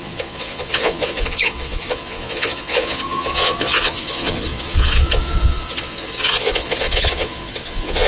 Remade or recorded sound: remade